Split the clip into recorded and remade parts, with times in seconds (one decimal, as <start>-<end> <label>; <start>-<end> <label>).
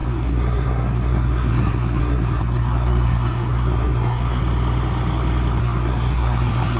0.0-4.4 remade; 4.4-5.6 recorded; 5.6-6.8 remade